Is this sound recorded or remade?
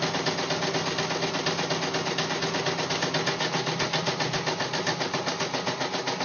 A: recorded